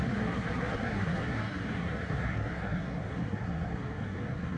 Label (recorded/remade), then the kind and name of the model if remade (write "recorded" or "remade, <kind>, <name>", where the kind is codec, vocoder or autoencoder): remade, codec, SNAC